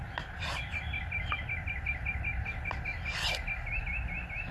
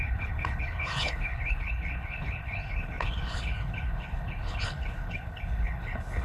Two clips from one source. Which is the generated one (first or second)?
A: second